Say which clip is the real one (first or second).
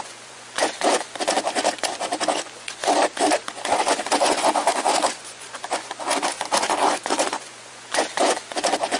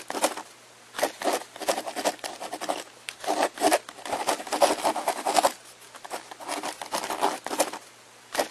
second